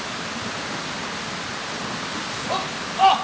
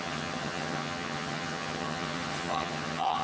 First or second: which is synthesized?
second